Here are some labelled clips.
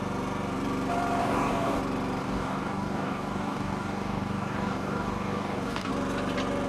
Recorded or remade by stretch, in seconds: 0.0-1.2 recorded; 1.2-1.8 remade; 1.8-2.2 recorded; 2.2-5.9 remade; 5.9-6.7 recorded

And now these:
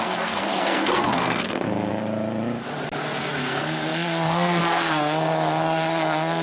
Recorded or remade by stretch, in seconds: 0.0-1.9 remade; 1.9-3.2 recorded; 3.2-6.4 remade

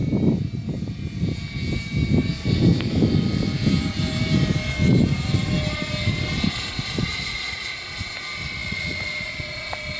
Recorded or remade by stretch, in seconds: 0.0-7.1 recorded; 7.1-7.8 remade; 7.8-8.6 recorded; 8.6-9.3 remade; 9.3-10.0 recorded

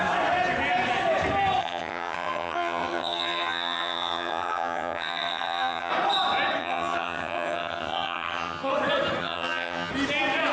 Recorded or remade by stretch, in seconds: 0.0-1.6 recorded; 1.6-5.9 remade; 5.9-6.6 recorded; 6.6-8.7 remade; 8.7-9.2 recorded; 9.2-9.9 remade; 9.9-10.5 recorded